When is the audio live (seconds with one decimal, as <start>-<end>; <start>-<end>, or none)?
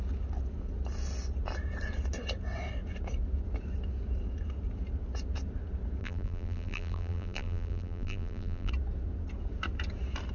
0.0-6.0; 8.7-10.3